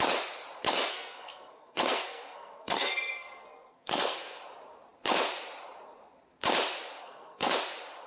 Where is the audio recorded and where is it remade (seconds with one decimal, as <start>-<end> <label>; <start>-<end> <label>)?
0.0-0.9 recorded; 0.9-4.4 remade; 4.4-7.0 recorded; 7.0-7.5 remade; 7.5-8.1 recorded